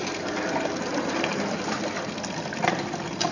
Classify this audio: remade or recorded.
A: recorded